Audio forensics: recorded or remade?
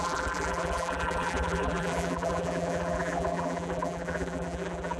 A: remade